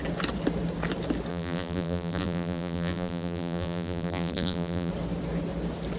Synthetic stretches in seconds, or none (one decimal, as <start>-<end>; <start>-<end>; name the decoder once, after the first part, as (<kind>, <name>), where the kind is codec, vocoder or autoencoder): 1.3-4.9 (vocoder, BigVGAN v2)